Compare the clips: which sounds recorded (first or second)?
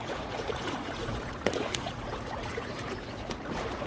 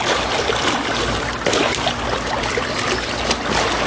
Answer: second